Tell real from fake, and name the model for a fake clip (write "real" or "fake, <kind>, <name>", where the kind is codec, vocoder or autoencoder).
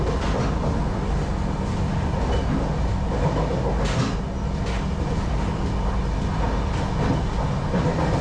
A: real